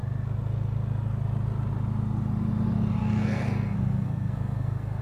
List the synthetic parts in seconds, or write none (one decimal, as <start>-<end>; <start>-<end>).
3.0-5.0